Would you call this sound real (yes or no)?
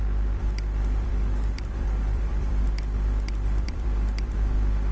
no